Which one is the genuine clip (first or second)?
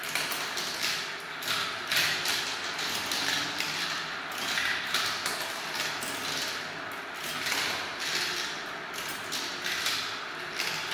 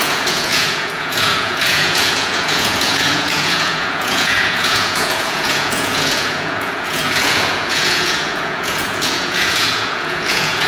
first